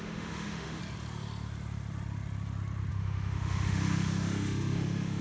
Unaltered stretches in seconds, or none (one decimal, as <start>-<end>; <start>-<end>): 0.8-2.9